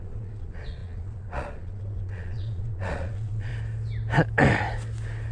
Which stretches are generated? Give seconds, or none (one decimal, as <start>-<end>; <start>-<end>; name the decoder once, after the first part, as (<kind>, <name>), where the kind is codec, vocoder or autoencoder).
0.0-3.5 (vocoder, Vocos)